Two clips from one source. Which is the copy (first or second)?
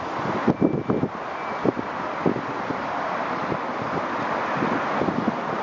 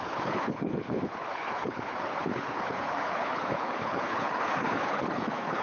second